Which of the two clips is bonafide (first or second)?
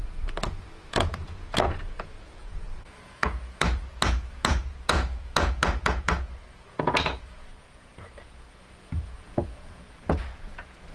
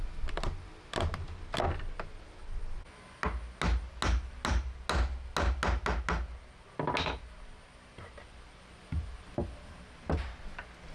second